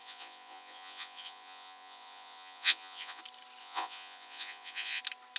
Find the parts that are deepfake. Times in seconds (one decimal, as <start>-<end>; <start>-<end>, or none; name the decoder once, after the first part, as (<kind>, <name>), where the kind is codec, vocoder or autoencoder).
0.0-3.2 (vocoder, Vocos); 3.6-5.0